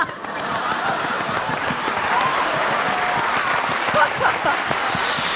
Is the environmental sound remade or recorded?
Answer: recorded